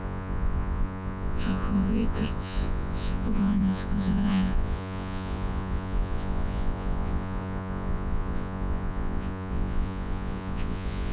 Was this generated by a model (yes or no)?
yes